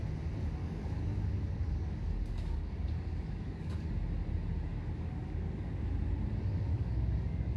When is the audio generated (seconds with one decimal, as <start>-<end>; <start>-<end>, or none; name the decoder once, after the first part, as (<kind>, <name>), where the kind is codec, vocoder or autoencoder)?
0.6-3.9 (codec, DAC); 4.7-5.9; 6.7-7.6